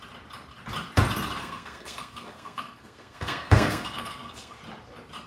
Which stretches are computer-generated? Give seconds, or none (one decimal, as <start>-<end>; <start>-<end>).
1.4-4.6